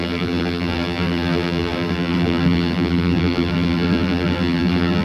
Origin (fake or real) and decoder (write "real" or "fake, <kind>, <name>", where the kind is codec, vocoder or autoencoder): fake, vocoder, BigVGAN v2